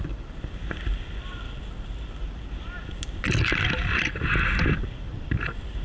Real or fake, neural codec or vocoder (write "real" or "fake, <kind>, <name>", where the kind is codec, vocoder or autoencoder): real